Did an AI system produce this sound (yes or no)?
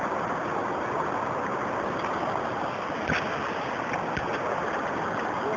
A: no